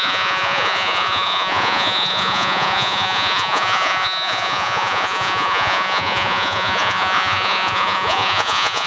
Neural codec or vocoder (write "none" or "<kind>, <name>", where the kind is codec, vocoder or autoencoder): vocoder, Vocos